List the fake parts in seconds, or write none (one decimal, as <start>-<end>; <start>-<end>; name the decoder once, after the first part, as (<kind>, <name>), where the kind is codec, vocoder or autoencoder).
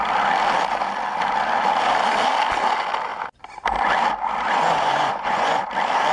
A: 4.5-5.6 (vocoder, Vocos)